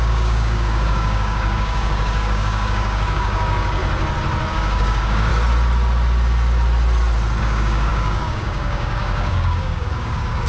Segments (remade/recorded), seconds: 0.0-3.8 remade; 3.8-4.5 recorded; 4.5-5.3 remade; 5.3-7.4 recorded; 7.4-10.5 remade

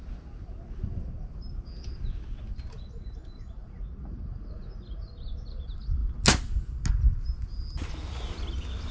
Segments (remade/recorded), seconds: 0.0-3.6 recorded; 3.6-5.1 remade; 5.1-8.9 recorded

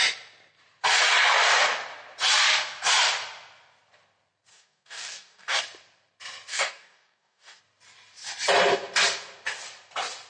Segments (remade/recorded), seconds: 0.0-4.5 recorded; 4.5-5.6 remade; 5.6-6.5 recorded; 6.5-7.6 remade; 7.6-10.3 recorded

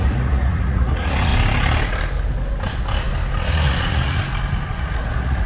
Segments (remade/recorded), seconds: 0.0-1.3 remade; 1.3-3.4 recorded; 3.4-4.2 remade; 4.2-4.7 recorded; 4.7-5.5 remade

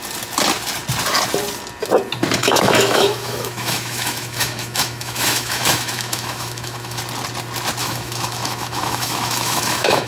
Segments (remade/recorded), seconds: 0.0-2.4 recorded; 2.4-7.0 remade; 7.0-7.8 recorded; 7.8-10.1 remade

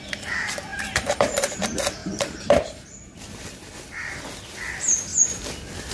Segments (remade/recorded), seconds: 0.0-0.7 recorded; 0.7-1.6 remade; 1.6-2.0 recorded; 2.0-3.3 remade; 3.3-5.9 recorded

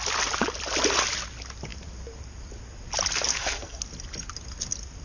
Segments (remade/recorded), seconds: 0.0-3.3 recorded; 3.3-3.8 remade; 3.8-5.0 recorded

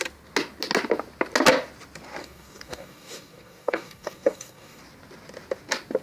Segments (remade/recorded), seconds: 0.0-2.2 recorded; 2.2-4.8 remade; 4.8-6.0 recorded